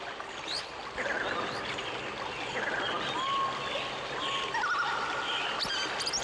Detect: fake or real real